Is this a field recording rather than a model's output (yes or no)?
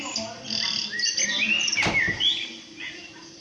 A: yes